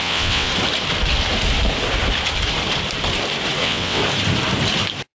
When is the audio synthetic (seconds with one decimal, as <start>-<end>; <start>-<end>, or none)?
0.0-0.5; 3.6-4.0